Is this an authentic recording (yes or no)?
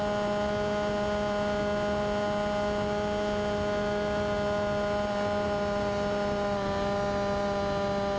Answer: yes